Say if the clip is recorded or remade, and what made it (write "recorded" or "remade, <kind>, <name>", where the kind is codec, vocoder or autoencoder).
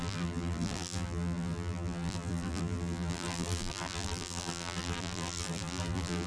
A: remade, vocoder, BigVGAN v2